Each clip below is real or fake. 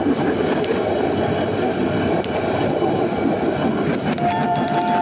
fake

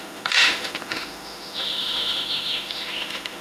fake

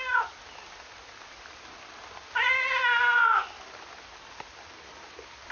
real